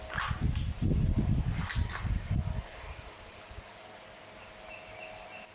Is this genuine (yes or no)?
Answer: yes